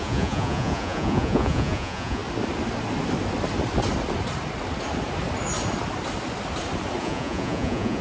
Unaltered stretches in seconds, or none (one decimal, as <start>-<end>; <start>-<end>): 2.2-7.0